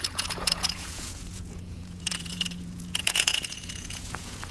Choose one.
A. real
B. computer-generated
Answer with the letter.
B